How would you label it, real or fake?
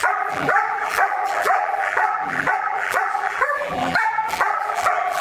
fake